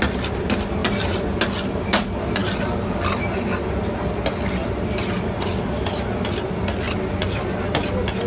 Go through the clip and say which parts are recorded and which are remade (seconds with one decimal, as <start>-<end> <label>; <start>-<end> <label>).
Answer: 0.0-8.3 recorded